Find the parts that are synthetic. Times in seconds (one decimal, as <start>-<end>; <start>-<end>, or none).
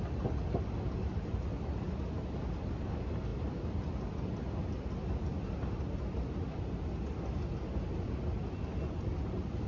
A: none